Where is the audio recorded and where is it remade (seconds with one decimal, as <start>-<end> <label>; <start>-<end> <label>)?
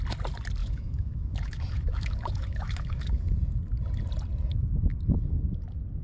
0.0-0.6 recorded; 0.6-3.3 remade; 3.3-6.0 recorded